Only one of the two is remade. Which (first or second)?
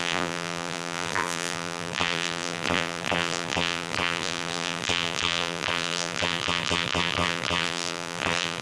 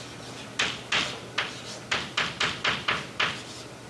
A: first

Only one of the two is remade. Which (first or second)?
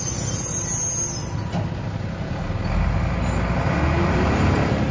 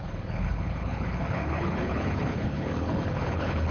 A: second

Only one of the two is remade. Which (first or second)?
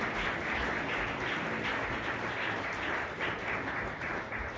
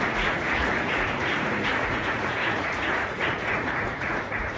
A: second